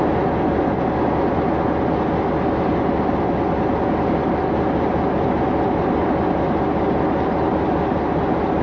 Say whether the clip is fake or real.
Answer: real